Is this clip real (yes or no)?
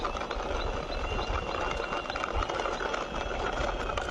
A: yes